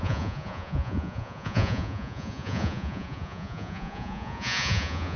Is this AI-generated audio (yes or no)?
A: yes